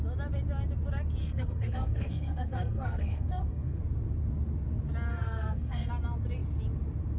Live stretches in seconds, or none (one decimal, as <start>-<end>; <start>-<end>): 0.0-1.2; 3.8-5.1; 5.9-7.2